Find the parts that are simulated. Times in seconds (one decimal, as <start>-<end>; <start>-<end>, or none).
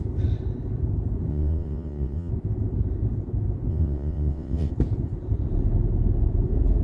1.3-2.3; 3.7-4.7